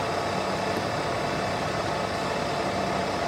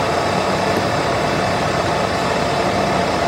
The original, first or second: first